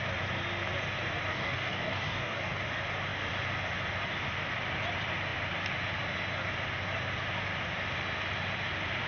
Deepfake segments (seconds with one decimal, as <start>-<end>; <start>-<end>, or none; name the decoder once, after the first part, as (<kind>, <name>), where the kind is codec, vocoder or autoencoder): 1.3-2.6 (codec, DAC)